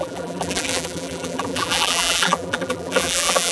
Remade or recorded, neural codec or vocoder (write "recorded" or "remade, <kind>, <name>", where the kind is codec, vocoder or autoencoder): remade, vocoder, BigVGAN v2